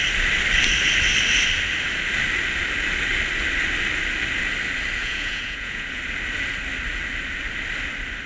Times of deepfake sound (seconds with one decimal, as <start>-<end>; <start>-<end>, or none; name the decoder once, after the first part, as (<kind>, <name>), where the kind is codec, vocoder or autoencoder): 5.0-6.0 (vocoder, Vocos)